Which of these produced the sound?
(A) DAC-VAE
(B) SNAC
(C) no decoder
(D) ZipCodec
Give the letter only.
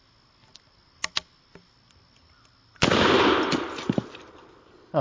C